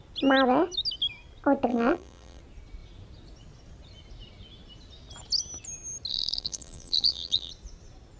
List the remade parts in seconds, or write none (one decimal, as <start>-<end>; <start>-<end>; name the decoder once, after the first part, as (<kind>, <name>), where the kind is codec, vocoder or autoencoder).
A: 1.7-2.4 (vocoder, BigVGAN v2); 6.1-7.5